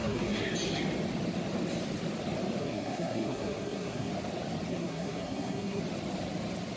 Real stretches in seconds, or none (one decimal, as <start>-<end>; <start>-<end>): 0.5-2.6; 4.1-4.7; 5.8-6.8